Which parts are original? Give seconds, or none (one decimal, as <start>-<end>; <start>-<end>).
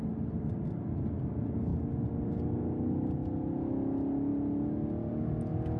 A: 0.0-5.8